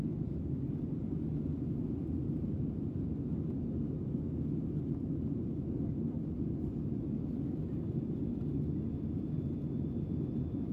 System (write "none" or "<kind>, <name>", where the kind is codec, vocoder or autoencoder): none